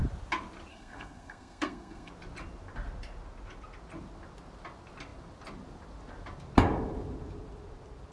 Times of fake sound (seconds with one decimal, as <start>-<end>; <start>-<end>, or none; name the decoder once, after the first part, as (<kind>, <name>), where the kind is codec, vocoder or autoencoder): 0.7-2.1 (codec, SNAC)